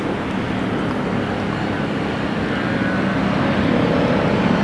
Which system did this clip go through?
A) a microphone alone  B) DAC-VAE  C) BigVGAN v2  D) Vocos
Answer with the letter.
A